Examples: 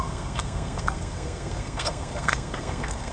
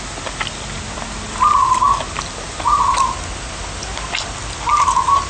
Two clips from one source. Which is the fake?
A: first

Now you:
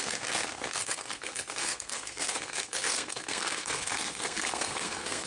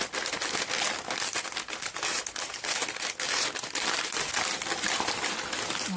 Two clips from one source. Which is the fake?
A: first